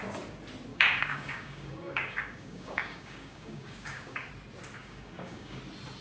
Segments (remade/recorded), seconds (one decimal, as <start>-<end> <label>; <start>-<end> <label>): 0.0-0.7 recorded; 0.7-4.3 remade; 4.3-4.8 recorded; 4.8-5.6 remade; 5.6-6.0 recorded